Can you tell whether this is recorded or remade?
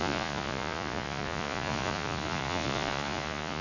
remade